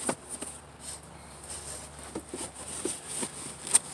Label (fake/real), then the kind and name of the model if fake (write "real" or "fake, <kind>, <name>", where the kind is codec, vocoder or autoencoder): real